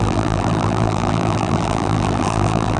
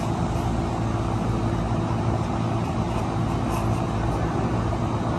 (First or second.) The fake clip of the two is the first